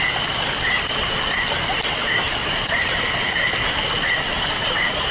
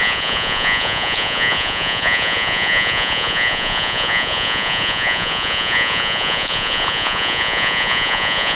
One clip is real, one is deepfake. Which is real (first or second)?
first